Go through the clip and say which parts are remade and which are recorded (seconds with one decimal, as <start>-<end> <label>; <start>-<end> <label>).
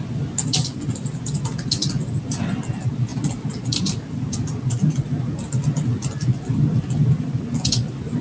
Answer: 0.0-8.2 recorded